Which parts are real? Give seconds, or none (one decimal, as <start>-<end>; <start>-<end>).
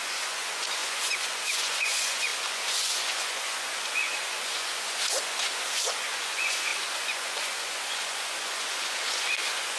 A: none